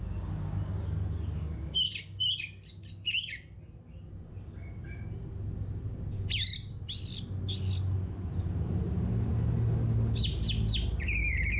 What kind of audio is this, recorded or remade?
recorded